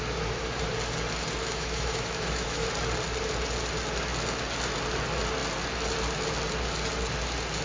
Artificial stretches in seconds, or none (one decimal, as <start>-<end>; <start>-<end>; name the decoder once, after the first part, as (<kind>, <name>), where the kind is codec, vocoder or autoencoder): 1.4-2.7 (autoencoder, DAC-VAE)